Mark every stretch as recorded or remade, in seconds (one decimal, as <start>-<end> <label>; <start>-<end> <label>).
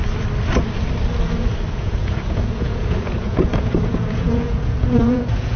0.0-1.7 recorded; 1.7-5.6 remade